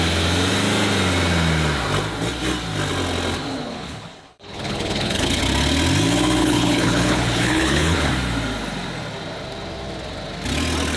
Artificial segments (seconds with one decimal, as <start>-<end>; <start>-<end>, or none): 3.5-5.4; 6.4-8.1